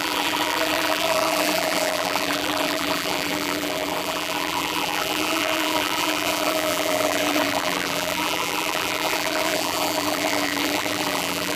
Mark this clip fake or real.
fake